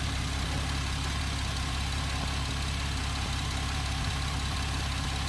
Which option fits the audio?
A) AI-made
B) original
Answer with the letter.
B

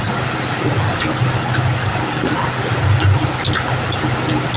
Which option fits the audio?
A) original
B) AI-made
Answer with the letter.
A